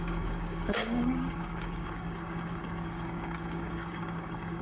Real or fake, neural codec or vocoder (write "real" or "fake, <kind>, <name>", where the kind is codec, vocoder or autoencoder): fake, codec, DAC